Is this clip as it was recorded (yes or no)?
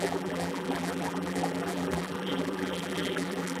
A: no